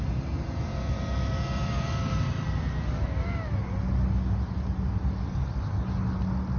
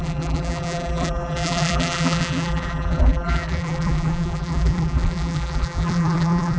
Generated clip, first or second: second